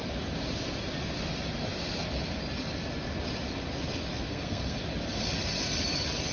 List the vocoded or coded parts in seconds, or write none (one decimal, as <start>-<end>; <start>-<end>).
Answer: 4.1-4.8